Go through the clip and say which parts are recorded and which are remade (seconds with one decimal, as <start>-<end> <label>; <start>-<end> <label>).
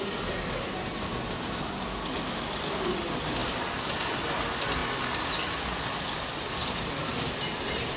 0.0-3.4 recorded; 3.4-4.1 remade; 4.1-8.0 recorded